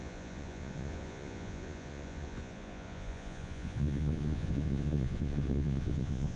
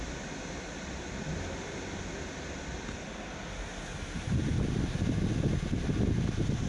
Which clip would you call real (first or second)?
second